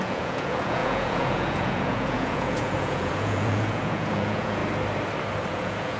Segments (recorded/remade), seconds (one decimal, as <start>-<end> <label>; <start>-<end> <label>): 0.0-4.6 remade; 4.6-5.5 recorded; 5.5-6.0 remade